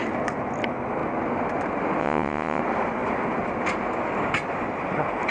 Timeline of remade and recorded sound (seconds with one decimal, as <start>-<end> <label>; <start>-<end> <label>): 0.0-2.0 recorded; 2.0-2.6 remade; 2.6-5.3 recorded